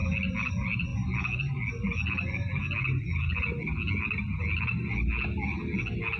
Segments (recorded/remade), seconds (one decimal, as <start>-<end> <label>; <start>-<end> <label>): 0.0-6.2 recorded